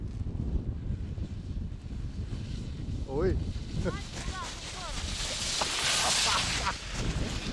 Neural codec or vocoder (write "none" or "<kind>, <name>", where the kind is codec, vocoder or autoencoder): none